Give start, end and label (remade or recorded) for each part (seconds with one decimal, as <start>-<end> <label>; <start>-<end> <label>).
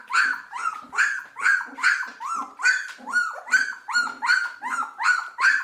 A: 0.0-5.6 recorded